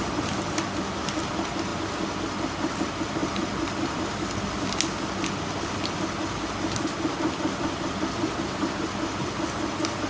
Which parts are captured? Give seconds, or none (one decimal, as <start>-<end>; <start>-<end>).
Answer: 0.0-10.1